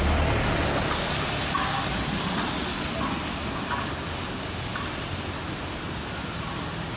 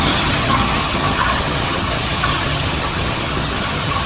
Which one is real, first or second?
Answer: first